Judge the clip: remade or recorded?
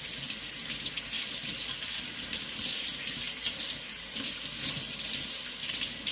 recorded